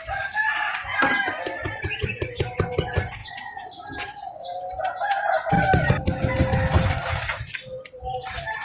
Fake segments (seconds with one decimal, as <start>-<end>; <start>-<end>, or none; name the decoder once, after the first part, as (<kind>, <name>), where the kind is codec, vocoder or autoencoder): none